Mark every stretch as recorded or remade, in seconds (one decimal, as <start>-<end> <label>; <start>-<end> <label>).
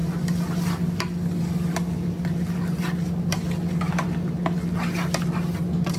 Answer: 0.0-6.0 recorded